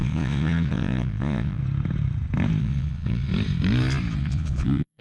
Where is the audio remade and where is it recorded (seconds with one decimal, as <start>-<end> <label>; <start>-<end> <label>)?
0.0-1.6 remade; 1.6-2.6 recorded; 2.6-3.3 remade; 3.3-4.2 recorded; 4.2-5.0 remade